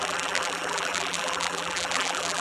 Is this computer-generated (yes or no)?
yes